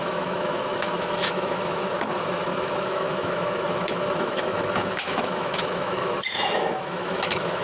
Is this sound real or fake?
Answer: fake